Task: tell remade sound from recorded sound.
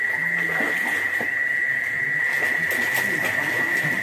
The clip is recorded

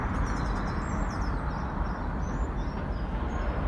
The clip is recorded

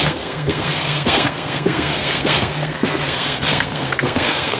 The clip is remade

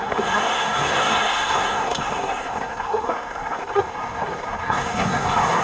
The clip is remade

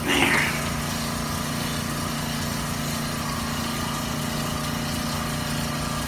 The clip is recorded